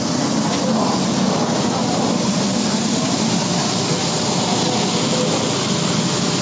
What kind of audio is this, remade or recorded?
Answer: recorded